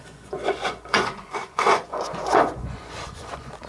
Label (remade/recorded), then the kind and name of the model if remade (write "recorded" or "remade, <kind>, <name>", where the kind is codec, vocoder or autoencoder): remade, vocoder, Vocos